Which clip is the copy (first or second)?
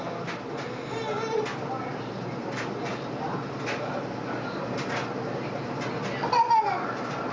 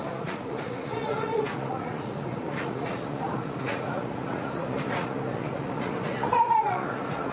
second